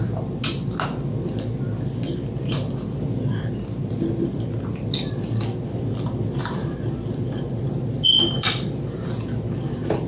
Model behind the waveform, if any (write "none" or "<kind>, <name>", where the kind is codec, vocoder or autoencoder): none